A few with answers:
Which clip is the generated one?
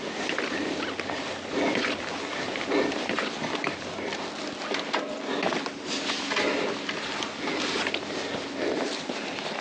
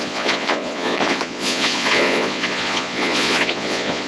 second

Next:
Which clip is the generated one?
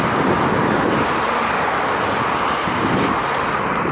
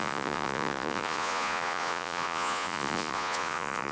second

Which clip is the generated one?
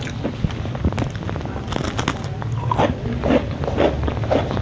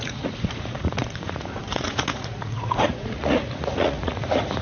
second